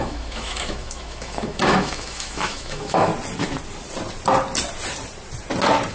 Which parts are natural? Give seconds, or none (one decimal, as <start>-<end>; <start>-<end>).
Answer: 3.1-5.9